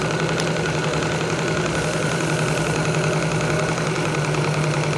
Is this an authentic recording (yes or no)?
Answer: yes